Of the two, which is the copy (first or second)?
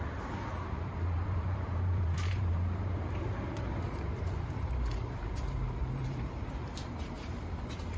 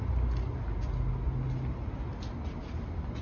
first